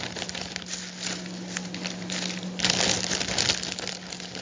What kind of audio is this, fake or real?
real